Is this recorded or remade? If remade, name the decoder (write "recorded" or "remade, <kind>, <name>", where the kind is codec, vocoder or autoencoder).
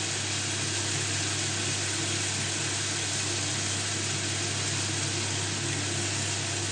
recorded